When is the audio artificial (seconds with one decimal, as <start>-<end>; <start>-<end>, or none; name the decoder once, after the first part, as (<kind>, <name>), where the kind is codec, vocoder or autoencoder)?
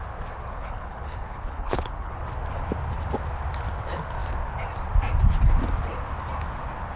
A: 0.5-2.2 (codec, HILCodec)